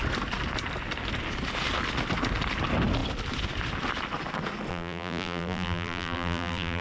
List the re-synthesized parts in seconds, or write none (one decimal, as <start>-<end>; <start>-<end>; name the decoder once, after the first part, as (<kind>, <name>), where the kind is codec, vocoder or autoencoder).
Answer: 4.7-6.8 (vocoder, BigVGAN v2)